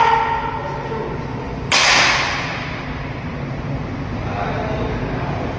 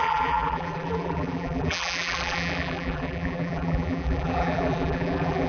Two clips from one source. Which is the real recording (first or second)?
first